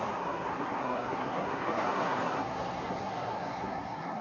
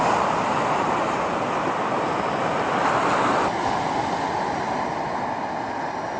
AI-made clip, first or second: first